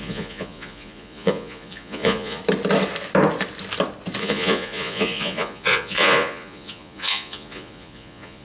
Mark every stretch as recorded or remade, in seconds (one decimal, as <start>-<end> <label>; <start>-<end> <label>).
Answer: 0.0-2.4 remade; 2.4-4.2 recorded; 4.2-8.4 remade